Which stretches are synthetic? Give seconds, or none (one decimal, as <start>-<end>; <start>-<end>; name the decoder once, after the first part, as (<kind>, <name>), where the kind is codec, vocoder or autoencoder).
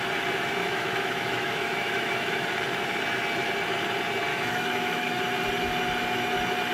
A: 0.6-2.5 (autoencoder, DAC-VAE); 4.3-5.2